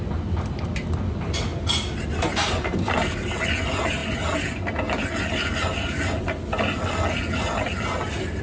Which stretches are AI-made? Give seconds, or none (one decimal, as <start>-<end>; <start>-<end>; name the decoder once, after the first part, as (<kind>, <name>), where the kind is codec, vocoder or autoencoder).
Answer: none